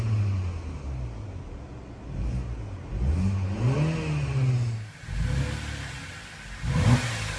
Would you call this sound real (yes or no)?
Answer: yes